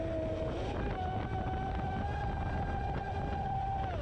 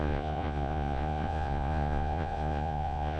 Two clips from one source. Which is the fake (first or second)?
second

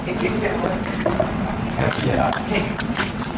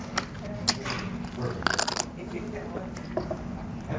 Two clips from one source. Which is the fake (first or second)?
first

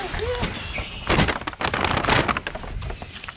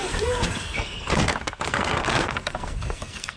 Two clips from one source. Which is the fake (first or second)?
second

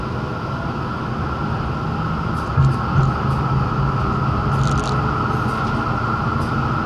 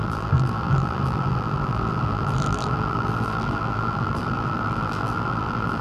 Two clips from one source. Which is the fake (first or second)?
second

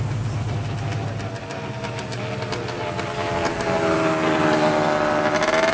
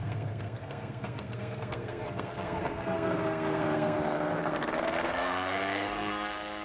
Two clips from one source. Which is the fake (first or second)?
second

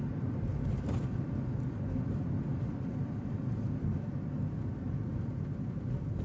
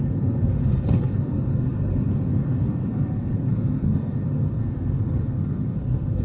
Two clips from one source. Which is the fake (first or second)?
second